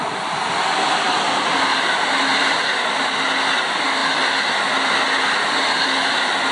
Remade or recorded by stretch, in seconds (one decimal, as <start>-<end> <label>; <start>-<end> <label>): 0.0-6.5 recorded